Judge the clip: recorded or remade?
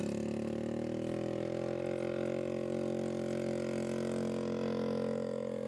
recorded